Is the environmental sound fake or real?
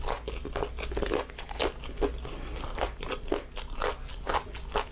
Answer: real